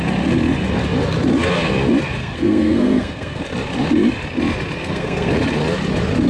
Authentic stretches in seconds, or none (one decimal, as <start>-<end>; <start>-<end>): 0.0-2.2; 3.4-4.8; 5.3-6.3